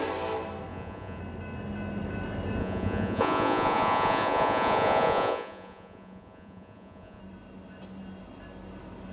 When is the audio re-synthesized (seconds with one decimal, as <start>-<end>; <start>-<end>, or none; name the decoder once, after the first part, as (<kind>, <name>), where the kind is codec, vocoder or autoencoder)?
0.7-1.2 (vocoder, Vocos); 2.6-7.2